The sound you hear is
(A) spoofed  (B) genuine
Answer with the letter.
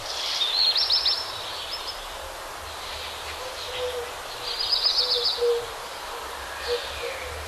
B